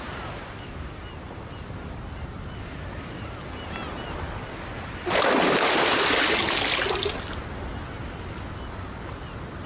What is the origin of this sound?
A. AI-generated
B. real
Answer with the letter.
B